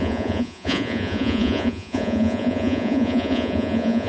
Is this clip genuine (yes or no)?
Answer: no